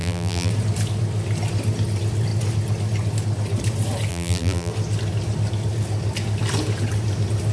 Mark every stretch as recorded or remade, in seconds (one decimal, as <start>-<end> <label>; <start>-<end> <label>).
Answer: 0.0-0.5 remade; 0.5-4.1 recorded; 4.1-4.7 remade; 4.7-7.5 recorded